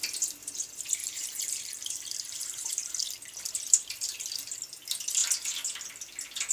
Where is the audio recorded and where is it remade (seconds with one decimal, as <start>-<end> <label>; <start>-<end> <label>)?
0.0-1.0 recorded; 1.0-2.9 remade; 2.9-6.5 recorded